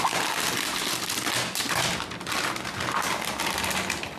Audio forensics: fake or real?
real